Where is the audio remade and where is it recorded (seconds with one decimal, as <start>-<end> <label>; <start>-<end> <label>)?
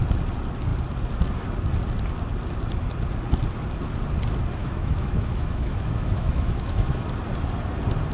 0.0-4.6 recorded; 4.6-7.0 remade; 7.0-8.1 recorded